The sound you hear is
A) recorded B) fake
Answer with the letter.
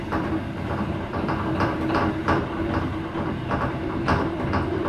B